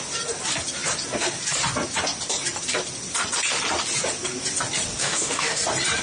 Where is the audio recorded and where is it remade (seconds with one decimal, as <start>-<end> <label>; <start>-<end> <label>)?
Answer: 0.0-5.0 recorded; 5.0-5.6 remade; 5.6-6.0 recorded